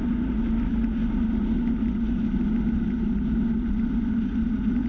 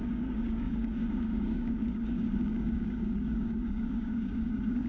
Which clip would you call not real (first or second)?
second